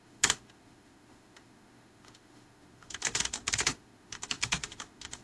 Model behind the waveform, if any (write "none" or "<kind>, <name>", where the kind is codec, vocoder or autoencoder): autoencoder, DAC-VAE